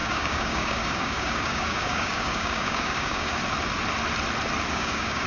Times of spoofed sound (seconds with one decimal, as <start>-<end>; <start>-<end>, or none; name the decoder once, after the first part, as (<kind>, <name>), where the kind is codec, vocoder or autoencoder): 0.0-3.4 (codec, DAC); 4.7-5.3